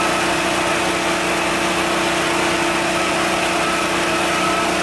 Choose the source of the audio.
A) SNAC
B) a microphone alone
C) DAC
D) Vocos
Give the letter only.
B